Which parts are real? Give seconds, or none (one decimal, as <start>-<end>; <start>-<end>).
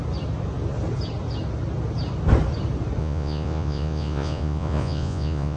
0.0-3.0